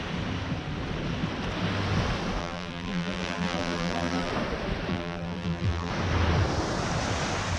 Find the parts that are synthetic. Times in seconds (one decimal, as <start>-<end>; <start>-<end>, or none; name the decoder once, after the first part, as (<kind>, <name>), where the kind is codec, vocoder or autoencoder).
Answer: 2.4-4.3 (vocoder, BigVGAN v2); 4.9-5.9